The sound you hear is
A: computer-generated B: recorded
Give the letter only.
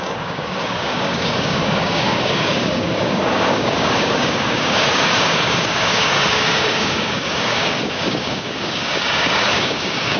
A